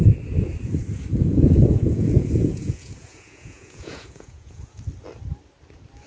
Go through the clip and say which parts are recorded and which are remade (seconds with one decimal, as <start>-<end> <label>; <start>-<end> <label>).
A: 0.0-1.1 recorded; 1.1-4.8 remade; 4.8-6.1 recorded